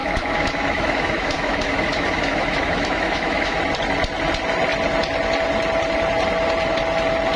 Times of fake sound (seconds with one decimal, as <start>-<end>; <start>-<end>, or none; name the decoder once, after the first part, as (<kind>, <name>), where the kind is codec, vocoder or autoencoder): 0.0-3.6 (autoencoder, DAC-VAE)